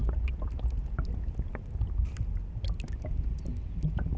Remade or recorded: recorded